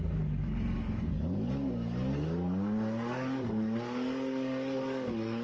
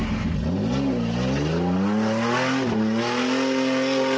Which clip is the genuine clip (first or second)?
second